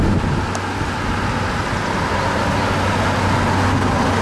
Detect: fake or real real